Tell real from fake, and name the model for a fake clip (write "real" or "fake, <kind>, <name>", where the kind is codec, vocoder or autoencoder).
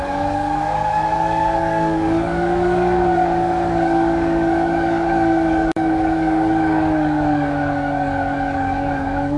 fake, codec, DAC